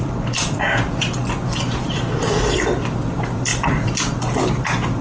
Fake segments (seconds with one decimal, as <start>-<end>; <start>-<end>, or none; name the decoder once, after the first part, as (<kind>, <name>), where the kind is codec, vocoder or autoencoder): 0.0-1.2 (vocoder, BigVGAN v2); 1.8-5.0